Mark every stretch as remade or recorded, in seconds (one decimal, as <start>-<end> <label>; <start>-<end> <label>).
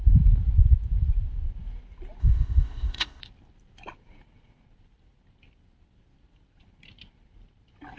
0.0-2.2 recorded; 2.2-3.2 remade; 3.2-8.0 recorded